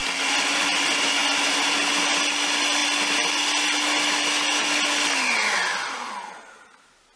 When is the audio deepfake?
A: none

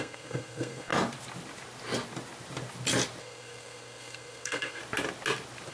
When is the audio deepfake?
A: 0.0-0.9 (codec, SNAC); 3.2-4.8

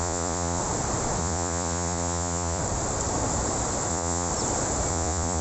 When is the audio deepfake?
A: 0.0-0.6 (vocoder, Vocos); 1.2-2.6; 3.9-4.3; 4.9-5.4

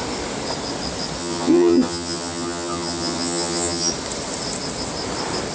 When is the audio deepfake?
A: 1.2-3.9 (vocoder, HiFi-GAN)